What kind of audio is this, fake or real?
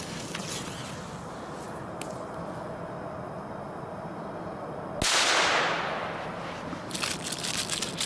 real